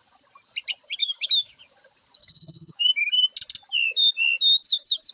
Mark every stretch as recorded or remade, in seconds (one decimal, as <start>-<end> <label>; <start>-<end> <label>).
0.0-1.0 recorded; 1.0-1.6 remade; 1.6-2.2 recorded; 2.2-3.0 remade; 3.0-3.8 recorded; 3.8-5.1 remade